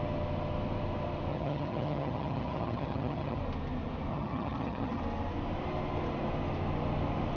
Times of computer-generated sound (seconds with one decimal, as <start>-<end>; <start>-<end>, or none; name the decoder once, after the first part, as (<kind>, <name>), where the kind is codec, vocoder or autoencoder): 1.3-3.4 (vocoder, HiFi-GAN); 4.1-5.0